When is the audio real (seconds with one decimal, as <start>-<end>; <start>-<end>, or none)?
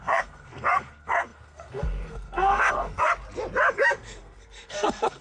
3.1-3.7